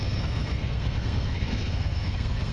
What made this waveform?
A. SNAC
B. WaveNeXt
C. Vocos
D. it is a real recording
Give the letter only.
A